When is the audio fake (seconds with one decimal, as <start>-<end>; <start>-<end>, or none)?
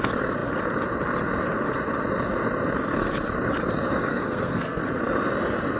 4.1-4.8